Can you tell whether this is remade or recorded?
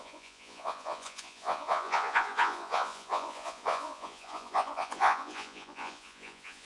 remade